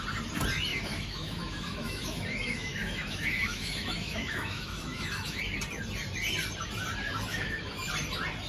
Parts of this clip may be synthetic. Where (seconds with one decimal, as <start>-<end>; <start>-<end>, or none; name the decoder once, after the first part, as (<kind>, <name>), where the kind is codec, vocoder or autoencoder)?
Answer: 0.7-5.4 (autoencoder, DAC-VAE); 7.3-7.9